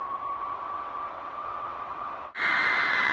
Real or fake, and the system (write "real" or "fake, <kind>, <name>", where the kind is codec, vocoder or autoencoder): fake, vocoder, WaveNeXt